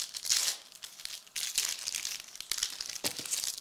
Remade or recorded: recorded